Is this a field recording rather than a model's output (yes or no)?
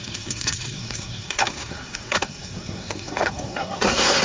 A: no